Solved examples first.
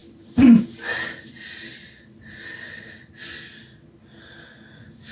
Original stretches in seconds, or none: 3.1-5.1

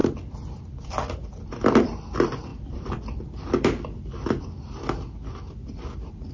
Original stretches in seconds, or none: 0.0-2.5; 4.4-6.3

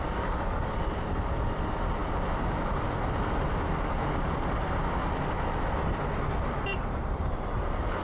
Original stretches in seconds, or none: 0.0-8.0

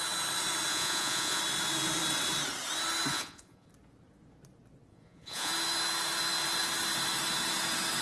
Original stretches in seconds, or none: 0.0-0.7; 1.4-3.1; 3.7-4.9; 5.5-8.0

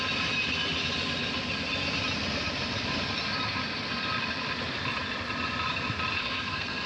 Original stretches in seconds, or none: 0.0-6.2

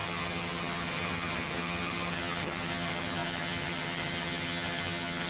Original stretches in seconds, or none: none